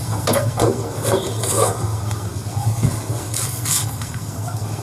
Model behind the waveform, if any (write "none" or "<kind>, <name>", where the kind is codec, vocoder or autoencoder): codec, SNAC